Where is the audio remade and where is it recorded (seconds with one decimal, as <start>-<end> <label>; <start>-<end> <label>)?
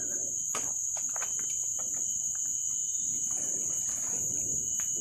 0.0-5.0 recorded